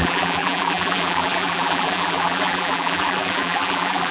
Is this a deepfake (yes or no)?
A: yes